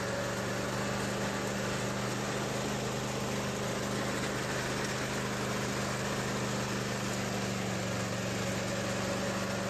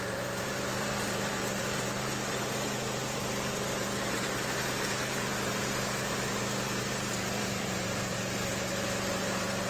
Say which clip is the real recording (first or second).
first